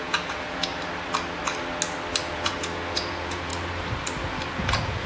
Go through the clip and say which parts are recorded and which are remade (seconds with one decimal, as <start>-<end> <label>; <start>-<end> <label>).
0.0-0.7 remade; 0.7-2.2 recorded; 2.2-3.5 remade; 3.5-4.5 recorded; 4.5-5.1 remade